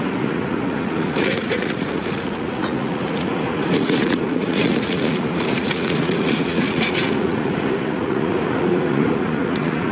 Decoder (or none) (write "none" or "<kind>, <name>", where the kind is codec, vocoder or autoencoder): vocoder, Vocos